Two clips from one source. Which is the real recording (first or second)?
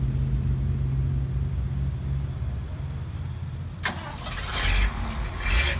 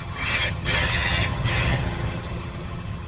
first